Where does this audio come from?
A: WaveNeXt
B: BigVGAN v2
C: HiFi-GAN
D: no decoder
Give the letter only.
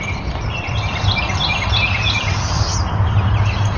B